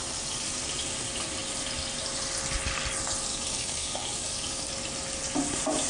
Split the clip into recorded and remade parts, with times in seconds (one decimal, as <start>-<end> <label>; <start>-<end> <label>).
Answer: 0.0-3.3 recorded; 3.3-4.7 remade; 4.7-5.9 recorded